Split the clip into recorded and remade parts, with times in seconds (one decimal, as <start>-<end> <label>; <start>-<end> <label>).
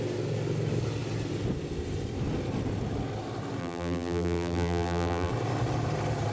0.0-3.6 recorded; 3.6-5.3 remade; 5.3-6.3 recorded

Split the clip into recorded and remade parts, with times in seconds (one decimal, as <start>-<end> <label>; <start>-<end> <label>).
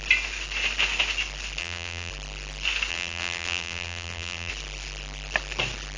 0.0-1.6 recorded; 1.6-2.1 remade; 2.1-2.9 recorded; 2.9-4.5 remade; 4.5-6.0 recorded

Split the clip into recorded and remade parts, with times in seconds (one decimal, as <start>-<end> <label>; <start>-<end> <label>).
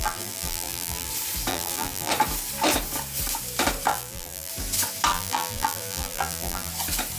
0.0-1.1 remade; 1.1-1.5 recorded; 1.5-2.1 remade; 2.1-3.9 recorded; 3.9-4.5 remade; 4.5-5.1 recorded; 5.1-6.7 remade; 6.7-7.2 recorded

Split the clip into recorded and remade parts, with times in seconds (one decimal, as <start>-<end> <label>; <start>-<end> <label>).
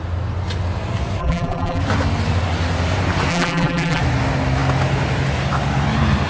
0.0-1.2 recorded; 1.2-1.8 remade; 1.8-3.3 recorded; 3.3-4.0 remade; 4.0-6.3 recorded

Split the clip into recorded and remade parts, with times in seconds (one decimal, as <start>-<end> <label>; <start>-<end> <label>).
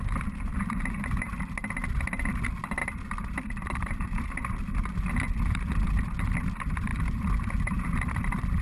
0.0-2.8 recorded; 2.8-4.2 remade; 4.2-6.9 recorded; 6.9-7.9 remade; 7.9-8.6 recorded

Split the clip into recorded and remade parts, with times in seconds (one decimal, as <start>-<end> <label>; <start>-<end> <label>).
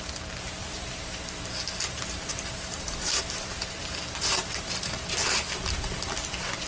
0.0-0.6 recorded; 0.6-4.6 remade; 4.6-6.7 recorded